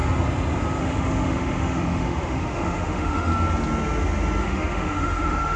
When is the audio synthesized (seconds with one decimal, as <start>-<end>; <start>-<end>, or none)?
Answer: 0.8-3.3; 4.4-5.6